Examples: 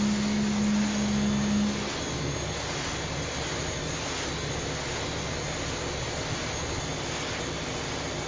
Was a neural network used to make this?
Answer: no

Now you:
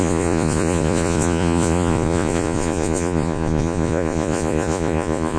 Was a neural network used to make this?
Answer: yes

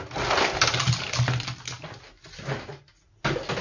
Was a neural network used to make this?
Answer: no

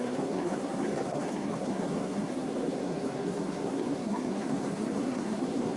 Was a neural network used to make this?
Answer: yes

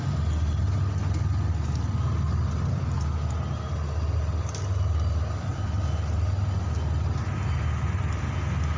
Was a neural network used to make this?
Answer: no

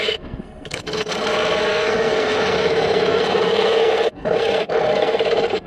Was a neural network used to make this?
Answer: yes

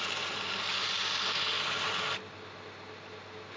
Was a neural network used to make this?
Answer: no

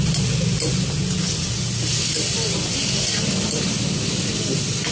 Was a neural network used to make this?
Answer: no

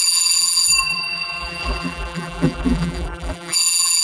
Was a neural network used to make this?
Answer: yes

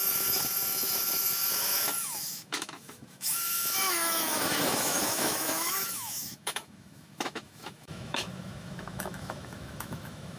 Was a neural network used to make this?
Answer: yes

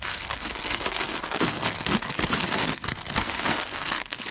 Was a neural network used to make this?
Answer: yes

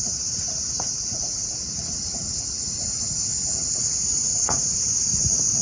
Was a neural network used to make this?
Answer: yes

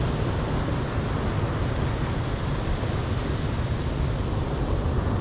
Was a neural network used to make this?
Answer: no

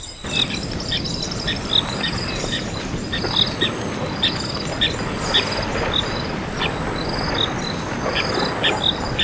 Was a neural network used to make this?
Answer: no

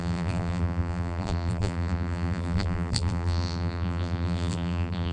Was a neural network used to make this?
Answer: yes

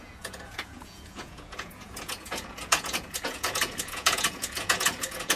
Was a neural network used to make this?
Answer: yes